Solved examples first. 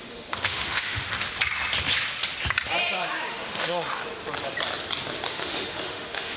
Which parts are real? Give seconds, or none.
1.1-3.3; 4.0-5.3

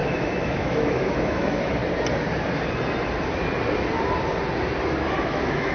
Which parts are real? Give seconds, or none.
1.8-5.2

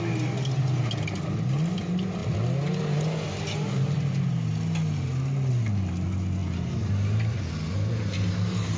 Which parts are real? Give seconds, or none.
0.0-8.8

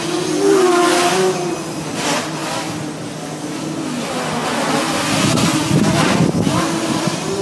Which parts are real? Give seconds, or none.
0.0-7.4

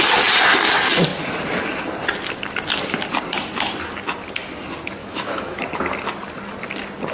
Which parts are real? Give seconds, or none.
0.0-5.0; 5.6-7.1